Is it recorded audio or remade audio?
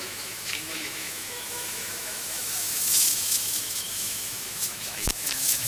remade